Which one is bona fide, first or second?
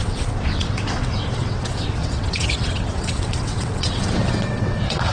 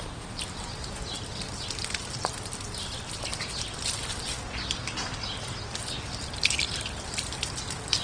second